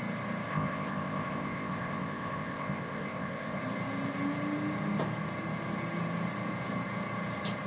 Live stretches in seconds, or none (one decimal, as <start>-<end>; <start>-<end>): 0.0-0.5; 3.6-7.7